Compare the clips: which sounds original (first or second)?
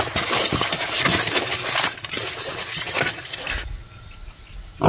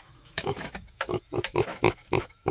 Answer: first